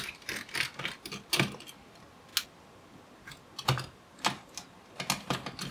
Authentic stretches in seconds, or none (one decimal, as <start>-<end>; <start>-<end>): 0.0-5.7